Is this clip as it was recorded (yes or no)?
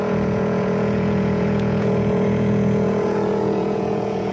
no